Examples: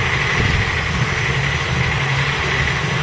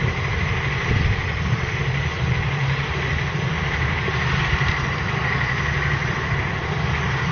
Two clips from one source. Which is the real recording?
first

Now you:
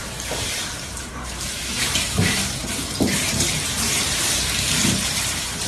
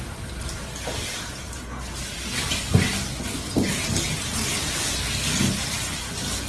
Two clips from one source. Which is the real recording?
second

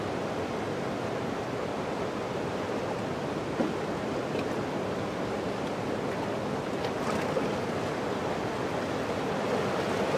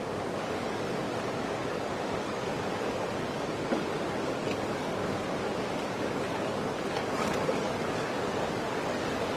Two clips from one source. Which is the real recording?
first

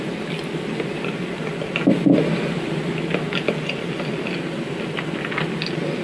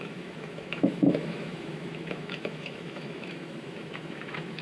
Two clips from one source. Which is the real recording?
first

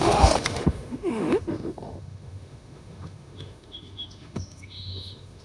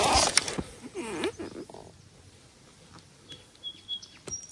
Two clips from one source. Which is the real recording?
second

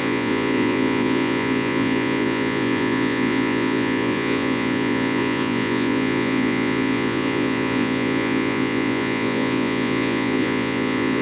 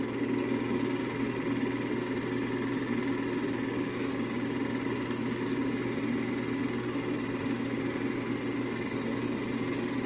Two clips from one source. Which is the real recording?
second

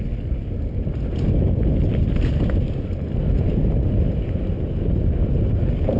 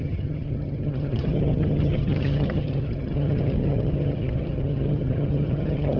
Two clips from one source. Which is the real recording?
first